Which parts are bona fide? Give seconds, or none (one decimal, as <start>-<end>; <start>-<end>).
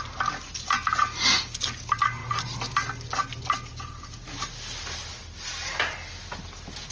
0.0-6.9